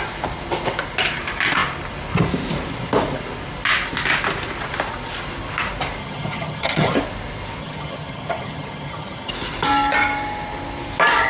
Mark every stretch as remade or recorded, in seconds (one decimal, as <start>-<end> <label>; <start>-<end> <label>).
0.0-6.0 recorded; 6.0-6.9 remade; 6.9-7.6 recorded; 7.6-9.3 remade; 9.3-11.3 recorded

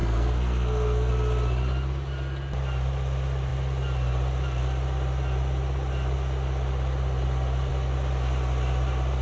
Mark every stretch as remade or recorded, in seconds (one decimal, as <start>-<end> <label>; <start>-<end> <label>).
0.0-1.1 remade; 1.1-9.2 recorded

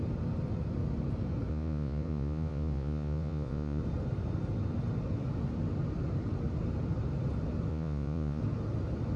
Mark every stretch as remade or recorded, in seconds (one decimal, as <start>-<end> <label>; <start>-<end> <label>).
0.0-1.5 recorded; 1.5-3.8 remade; 3.8-7.7 recorded; 7.7-8.4 remade; 8.4-9.2 recorded

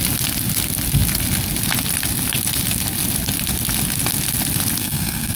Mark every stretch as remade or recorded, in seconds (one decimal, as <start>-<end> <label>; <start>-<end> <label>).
0.0-4.8 recorded; 4.8-5.4 remade

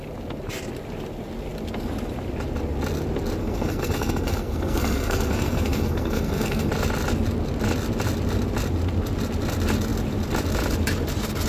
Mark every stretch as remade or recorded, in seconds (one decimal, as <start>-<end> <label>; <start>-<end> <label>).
0.0-3.4 recorded; 3.4-6.7 remade; 6.7-11.5 recorded

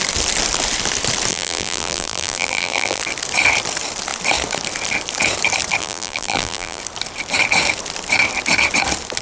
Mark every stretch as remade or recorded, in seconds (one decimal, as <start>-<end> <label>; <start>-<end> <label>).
0.0-1.3 recorded; 1.3-3.0 remade; 3.0-5.8 recorded; 5.8-6.8 remade; 6.8-9.2 recorded